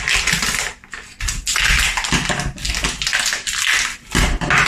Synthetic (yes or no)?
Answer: no